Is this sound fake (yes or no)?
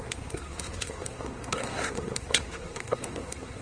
yes